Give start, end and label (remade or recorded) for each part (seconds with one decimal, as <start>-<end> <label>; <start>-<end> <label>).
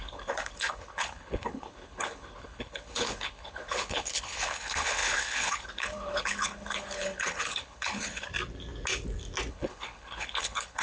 0.0-8.3 remade; 8.3-9.5 recorded; 9.5-10.8 remade